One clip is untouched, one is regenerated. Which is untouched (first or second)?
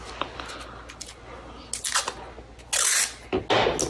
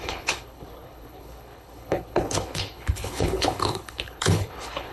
first